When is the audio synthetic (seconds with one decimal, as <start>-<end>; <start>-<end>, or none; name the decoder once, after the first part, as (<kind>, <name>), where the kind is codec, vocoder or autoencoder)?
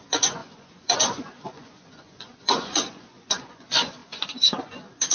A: 0.0-5.1 (vocoder, Vocos)